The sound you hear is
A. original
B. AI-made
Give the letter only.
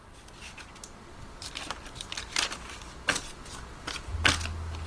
A